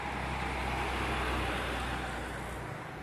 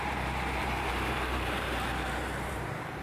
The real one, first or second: first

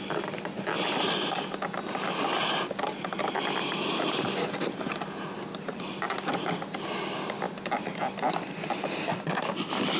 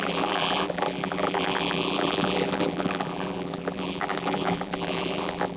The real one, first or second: first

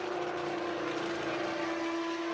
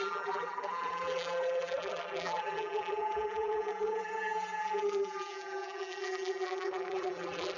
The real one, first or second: first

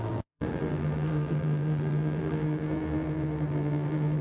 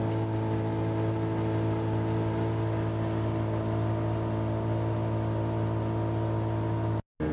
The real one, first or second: second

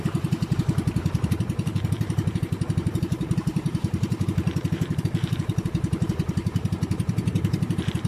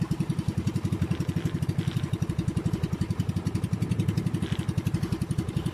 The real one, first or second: second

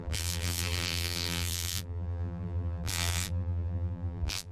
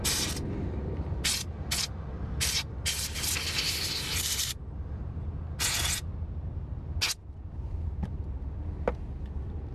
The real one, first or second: second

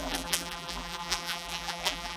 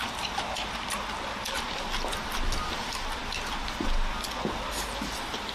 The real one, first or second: second